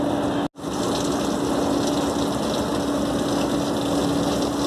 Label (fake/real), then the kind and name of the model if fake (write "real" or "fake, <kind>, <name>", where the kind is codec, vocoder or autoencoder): real